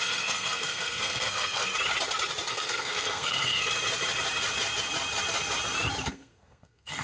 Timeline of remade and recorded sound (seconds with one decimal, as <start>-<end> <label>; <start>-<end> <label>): 0.0-1.7 remade; 1.7-2.5 recorded; 2.5-3.7 remade; 3.7-6.1 recorded; 6.1-7.0 remade

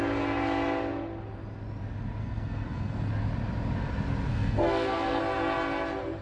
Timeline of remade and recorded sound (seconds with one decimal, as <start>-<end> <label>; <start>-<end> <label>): 0.0-2.2 recorded; 2.2-3.1 remade; 3.1-4.3 recorded; 4.3-5.2 remade; 5.2-6.2 recorded

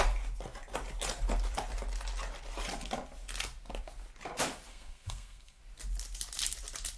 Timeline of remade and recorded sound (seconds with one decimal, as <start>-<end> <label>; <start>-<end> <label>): 0.0-4.7 recorded; 4.7-5.6 remade; 5.6-7.0 recorded

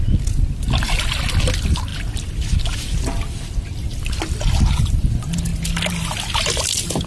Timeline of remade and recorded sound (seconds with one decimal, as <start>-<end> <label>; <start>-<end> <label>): 0.0-7.1 recorded